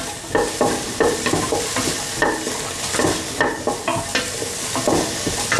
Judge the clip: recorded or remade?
recorded